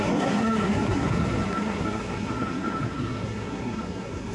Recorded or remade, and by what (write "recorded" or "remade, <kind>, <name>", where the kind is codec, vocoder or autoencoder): remade, codec, SNAC